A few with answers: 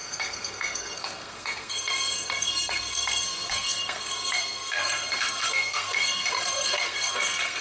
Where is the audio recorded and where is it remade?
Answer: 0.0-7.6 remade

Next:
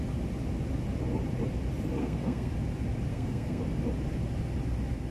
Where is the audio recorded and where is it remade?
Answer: 0.0-2.0 recorded; 2.0-2.5 remade; 2.5-3.1 recorded; 3.1-3.6 remade; 3.6-5.1 recorded

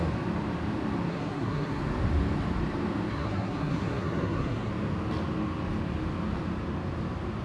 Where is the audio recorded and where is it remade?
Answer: 0.0-1.1 recorded; 1.1-1.8 remade; 1.8-3.1 recorded; 3.1-4.7 remade; 4.7-7.4 recorded

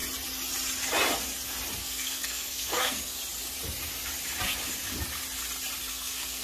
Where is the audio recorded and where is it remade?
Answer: 0.0-1.8 recorded; 1.8-3.2 remade; 3.2-5.9 recorded; 5.9-6.4 remade

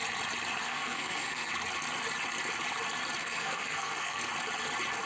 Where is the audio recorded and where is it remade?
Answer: 0.0-0.6 recorded; 0.6-1.5 remade; 1.5-3.2 recorded; 3.2-4.3 remade; 4.3-5.1 recorded